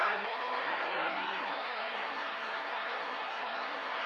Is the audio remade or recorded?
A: remade